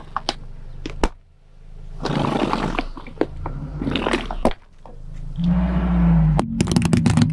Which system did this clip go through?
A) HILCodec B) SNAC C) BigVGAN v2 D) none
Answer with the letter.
D